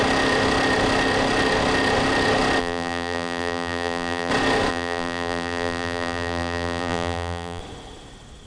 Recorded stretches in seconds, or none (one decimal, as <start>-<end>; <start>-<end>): 0.0-2.6; 4.3-4.7; 7.6-8.5